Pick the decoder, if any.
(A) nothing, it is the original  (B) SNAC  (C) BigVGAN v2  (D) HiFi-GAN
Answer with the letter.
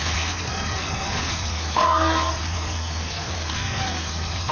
B